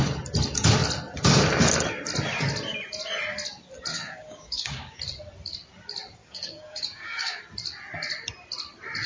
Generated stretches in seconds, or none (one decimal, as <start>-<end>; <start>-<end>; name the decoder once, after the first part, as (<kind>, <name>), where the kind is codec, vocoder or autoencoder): 3.9-5.0 (codec, DAC); 6.2-7.4